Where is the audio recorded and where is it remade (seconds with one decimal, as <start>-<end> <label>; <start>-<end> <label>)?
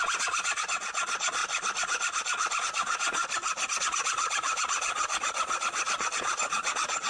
0.0-1.4 remade; 1.4-2.6 recorded; 2.6-3.2 remade; 3.2-3.8 recorded; 3.8-7.1 remade